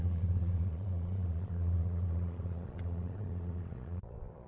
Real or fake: fake